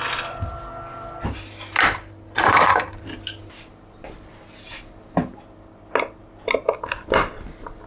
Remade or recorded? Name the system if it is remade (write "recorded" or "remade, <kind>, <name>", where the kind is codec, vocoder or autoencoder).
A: recorded